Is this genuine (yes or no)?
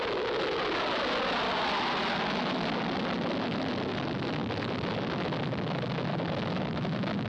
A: yes